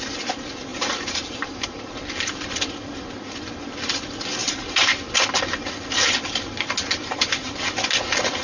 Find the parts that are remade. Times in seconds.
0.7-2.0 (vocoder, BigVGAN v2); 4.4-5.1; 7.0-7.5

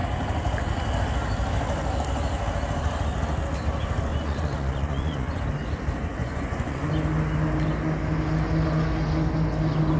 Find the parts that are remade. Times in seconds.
4.1-5.4 (vocoder, Vocos); 6.2-6.9

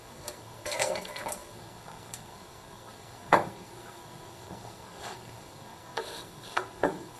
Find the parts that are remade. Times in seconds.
0.0-7.2 (codec, SNAC)